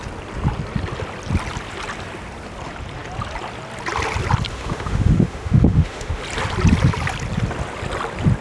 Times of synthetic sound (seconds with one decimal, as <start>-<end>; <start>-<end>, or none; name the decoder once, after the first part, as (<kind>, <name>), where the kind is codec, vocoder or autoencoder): 4.5-6.2 (autoencoder, DAC-VAE)